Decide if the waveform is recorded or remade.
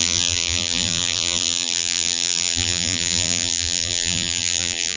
remade